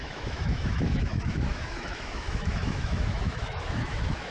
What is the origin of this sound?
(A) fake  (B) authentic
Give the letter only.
A